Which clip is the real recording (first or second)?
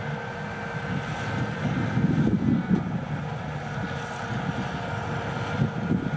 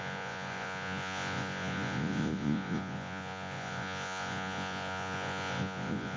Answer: first